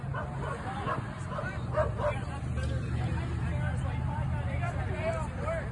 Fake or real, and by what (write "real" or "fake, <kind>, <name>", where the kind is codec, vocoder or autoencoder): real